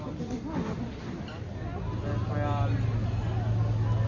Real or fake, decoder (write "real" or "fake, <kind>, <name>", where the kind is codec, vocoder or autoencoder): real